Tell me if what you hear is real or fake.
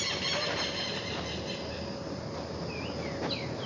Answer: real